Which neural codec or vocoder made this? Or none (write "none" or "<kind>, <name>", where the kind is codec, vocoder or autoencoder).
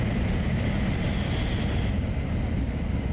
none